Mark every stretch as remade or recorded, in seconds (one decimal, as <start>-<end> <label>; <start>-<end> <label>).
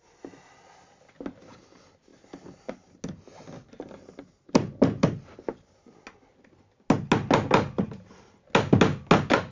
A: 0.0-9.5 recorded